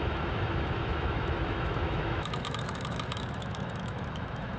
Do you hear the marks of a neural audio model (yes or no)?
yes